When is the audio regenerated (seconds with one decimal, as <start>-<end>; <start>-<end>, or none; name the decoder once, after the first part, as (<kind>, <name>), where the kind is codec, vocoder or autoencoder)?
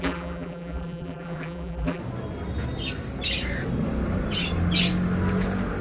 0.0-2.0 (vocoder, BigVGAN v2)